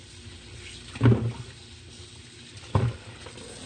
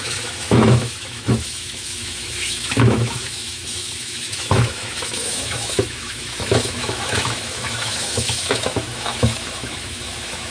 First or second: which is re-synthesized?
second